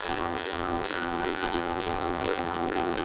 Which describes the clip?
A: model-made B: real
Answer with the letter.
A